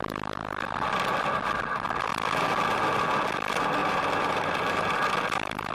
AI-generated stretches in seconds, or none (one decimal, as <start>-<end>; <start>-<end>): 3.8-4.8